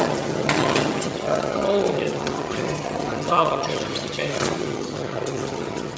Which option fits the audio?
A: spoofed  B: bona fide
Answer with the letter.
A